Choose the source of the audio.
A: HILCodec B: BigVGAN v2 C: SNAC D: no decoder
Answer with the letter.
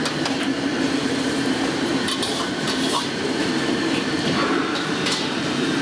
B